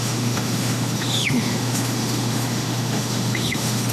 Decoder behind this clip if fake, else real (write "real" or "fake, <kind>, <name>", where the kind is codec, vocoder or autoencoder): fake, autoencoder, DAC-VAE